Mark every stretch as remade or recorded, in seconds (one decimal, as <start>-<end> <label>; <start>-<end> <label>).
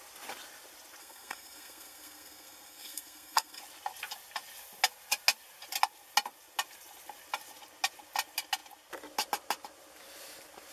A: 0.0-1.0 recorded; 1.0-3.6 remade; 3.6-10.7 recorded